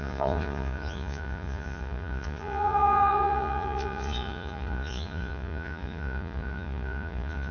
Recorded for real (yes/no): no